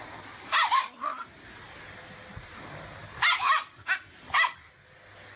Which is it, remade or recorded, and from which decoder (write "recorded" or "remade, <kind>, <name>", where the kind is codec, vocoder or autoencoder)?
recorded